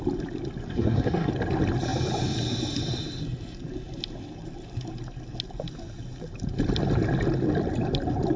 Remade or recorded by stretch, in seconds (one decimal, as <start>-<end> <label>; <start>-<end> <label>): 0.0-0.7 recorded; 0.7-1.3 remade; 1.3-8.4 recorded